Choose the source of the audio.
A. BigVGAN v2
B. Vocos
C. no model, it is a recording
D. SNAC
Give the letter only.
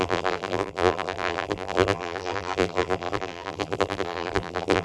A